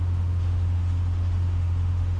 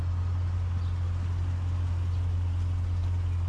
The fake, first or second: first